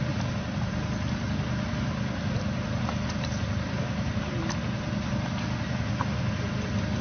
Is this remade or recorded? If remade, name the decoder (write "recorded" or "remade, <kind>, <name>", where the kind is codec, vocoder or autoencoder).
recorded